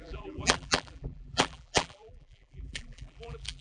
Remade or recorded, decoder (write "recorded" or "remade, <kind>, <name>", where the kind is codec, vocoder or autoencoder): remade, vocoder, BigVGAN v2